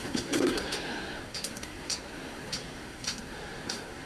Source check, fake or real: fake